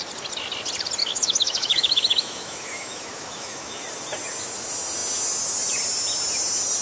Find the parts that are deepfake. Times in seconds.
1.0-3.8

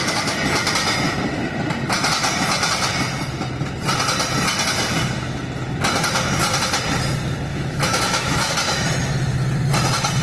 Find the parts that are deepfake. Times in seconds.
7.5-8.5

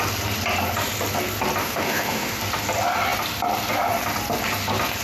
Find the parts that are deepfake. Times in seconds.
1.6-2.4

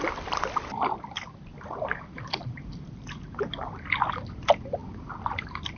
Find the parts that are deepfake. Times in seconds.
none